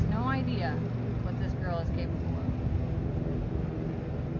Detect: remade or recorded recorded